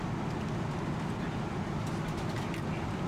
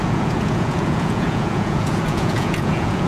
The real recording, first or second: first